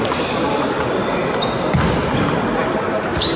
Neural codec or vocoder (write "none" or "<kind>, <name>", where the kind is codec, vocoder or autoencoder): none